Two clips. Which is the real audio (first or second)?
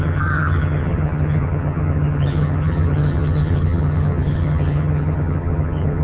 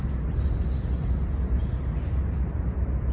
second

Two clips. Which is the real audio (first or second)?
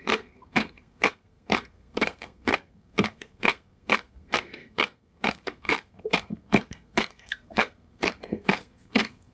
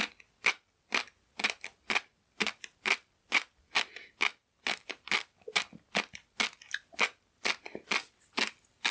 second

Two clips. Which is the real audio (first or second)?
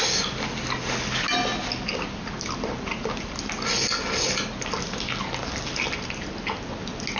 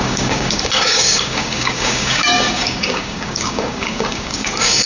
first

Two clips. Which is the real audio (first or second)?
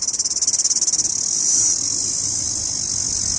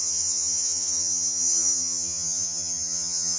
first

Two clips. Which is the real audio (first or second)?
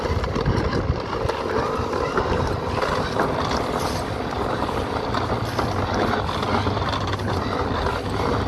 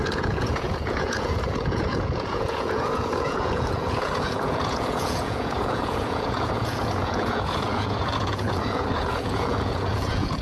first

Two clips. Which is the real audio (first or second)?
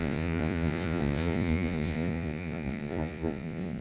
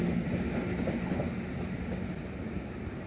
second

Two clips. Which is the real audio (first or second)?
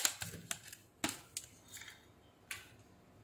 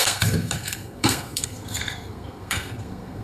first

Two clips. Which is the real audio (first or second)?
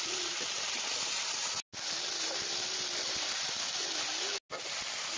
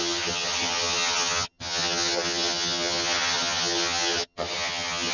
first